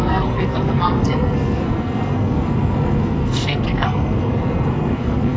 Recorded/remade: remade